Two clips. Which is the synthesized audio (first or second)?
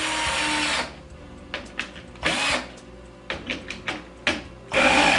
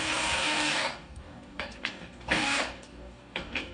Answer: second